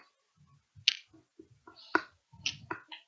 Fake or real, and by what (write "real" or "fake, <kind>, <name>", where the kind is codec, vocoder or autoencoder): real